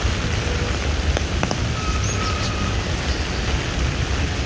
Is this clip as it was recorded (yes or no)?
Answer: yes